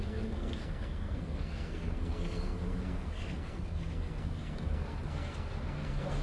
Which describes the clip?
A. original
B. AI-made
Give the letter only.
B